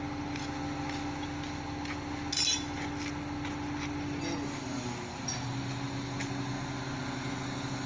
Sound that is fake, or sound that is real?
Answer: real